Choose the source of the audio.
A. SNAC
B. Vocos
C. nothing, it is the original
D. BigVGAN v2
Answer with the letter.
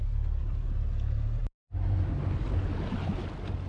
C